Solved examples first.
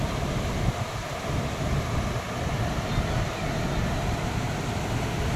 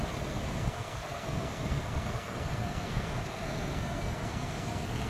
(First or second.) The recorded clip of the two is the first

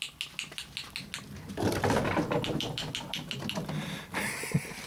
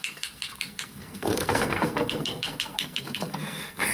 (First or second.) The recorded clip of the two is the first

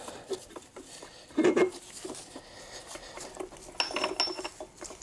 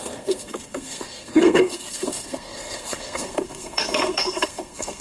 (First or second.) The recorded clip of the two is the first